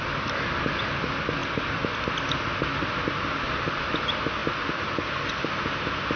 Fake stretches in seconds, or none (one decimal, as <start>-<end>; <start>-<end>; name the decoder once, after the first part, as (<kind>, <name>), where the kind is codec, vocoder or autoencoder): none